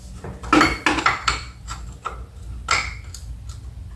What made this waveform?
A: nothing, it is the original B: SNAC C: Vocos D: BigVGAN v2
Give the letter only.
A